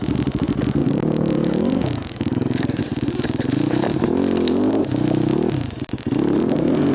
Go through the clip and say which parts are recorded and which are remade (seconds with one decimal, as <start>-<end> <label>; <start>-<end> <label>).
0.0-0.8 recorded; 0.8-2.8 remade; 2.8-6.9 recorded